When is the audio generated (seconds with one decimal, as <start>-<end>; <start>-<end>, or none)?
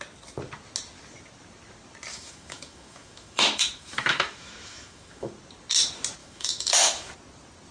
2.1-5.3; 6.2-7.1